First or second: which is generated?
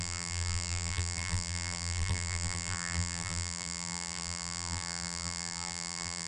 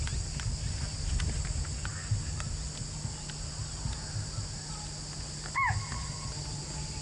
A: first